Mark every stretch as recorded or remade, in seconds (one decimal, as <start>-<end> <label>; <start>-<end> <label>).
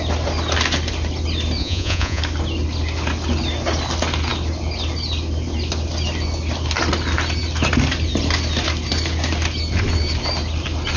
0.0-1.6 recorded; 1.6-2.2 remade; 2.2-11.0 recorded